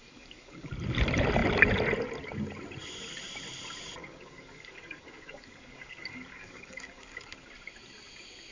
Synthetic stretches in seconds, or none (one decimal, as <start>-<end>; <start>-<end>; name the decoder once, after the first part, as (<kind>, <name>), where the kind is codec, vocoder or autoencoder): 0.0-0.7 (codec, DAC); 4.0-7.5